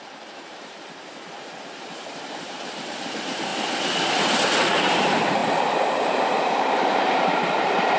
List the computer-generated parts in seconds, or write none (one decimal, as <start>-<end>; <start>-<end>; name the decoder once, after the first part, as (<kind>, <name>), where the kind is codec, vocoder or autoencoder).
0.0-3.5 (vocoder, BigVGAN v2); 4.1-5.4; 6.2-8.0